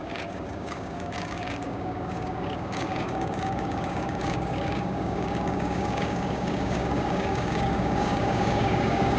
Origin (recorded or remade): remade